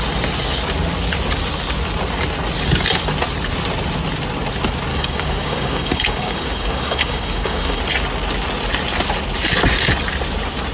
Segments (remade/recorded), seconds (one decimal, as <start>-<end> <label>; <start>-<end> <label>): 0.0-4.9 recorded; 4.9-7.8 remade; 7.8-10.7 recorded

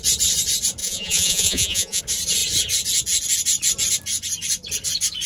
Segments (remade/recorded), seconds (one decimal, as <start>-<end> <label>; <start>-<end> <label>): 0.0-0.8 recorded; 0.8-2.0 remade; 2.0-5.3 recorded

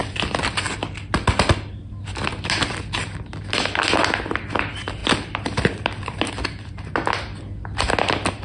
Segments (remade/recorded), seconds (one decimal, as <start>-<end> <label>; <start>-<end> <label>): 0.0-5.0 recorded; 5.0-6.3 remade; 6.3-8.4 recorded

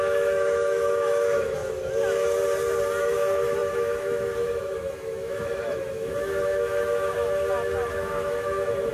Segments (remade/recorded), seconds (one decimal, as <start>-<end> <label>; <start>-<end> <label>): 0.0-1.6 remade; 1.6-3.0 recorded; 3.0-8.9 remade

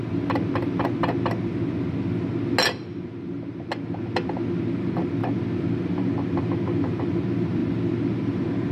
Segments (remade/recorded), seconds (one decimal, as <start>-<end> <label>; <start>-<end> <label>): 0.0-8.7 recorded

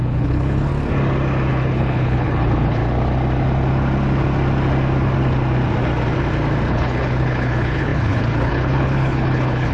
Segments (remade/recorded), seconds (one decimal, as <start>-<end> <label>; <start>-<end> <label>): 0.0-0.7 remade; 0.7-1.5 recorded; 1.5-2.8 remade; 2.8-6.7 recorded; 6.7-9.7 remade

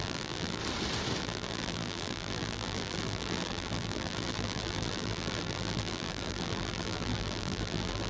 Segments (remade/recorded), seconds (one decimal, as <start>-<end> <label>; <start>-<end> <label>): 0.0-0.6 remade; 0.6-1.2 recorded; 1.2-8.1 remade